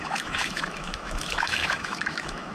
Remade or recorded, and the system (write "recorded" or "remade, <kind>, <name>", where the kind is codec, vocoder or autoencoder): remade, autoencoder, DAC-VAE